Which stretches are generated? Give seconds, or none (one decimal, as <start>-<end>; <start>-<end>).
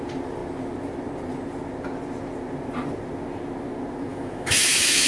4.1-5.1